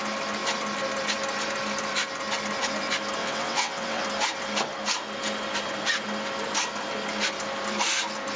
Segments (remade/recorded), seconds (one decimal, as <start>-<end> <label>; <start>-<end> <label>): 0.0-3.2 recorded; 3.2-4.0 remade; 4.0-8.4 recorded